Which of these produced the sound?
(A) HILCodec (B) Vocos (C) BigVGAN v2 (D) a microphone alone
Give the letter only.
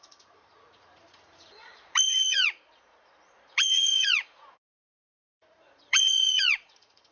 B